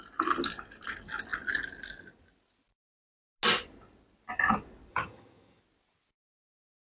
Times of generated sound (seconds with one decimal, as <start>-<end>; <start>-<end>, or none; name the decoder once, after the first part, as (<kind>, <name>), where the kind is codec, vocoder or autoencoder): 4.9-5.6 (vocoder, HiFi-GAN)